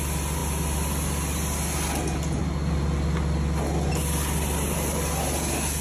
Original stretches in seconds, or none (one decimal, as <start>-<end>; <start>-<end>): 0.0-5.8